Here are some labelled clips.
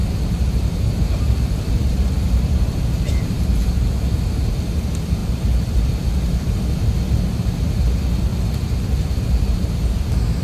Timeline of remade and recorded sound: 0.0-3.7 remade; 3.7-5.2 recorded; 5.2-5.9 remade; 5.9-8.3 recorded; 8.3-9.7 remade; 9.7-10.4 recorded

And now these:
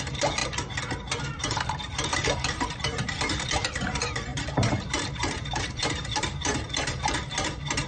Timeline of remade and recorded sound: 0.0-0.4 remade; 0.4-1.2 recorded; 1.2-7.9 remade

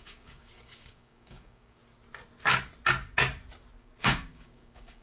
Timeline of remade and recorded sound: 0.0-1.8 remade; 1.8-3.8 recorded; 3.8-5.0 remade

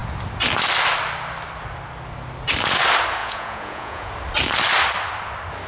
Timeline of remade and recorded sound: 0.0-3.2 recorded; 3.2-4.1 remade; 4.1-5.7 recorded

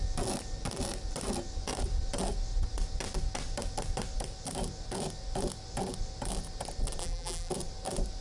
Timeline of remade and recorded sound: 0.0-7.0 recorded; 7.0-7.5 remade; 7.5-8.2 recorded

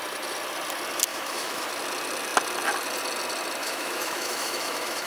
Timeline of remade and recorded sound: 0.0-1.1 recorded; 1.1-1.7 remade; 1.7-3.6 recorded; 3.6-5.1 remade

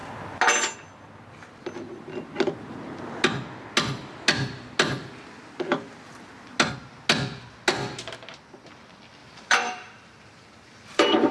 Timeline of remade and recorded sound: 0.0-9.2 recorded; 9.2-11.3 remade